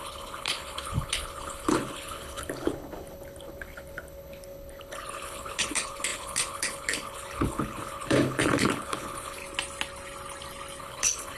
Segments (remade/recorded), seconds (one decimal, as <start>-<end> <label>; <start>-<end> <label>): 0.0-9.4 remade; 9.4-10.8 recorded; 10.8-11.4 remade